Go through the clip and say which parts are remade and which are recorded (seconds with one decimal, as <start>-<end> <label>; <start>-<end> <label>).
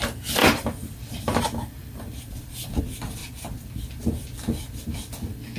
0.0-0.4 recorded; 0.4-2.8 remade; 2.8-5.6 recorded